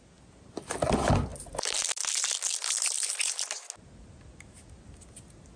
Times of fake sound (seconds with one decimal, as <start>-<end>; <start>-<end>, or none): none